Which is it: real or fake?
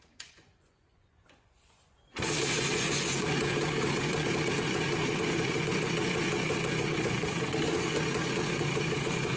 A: fake